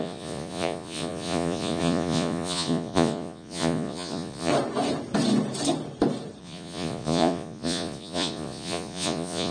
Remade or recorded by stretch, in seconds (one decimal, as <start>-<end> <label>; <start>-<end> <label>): 0.0-4.5 remade; 4.5-6.4 recorded; 6.4-9.5 remade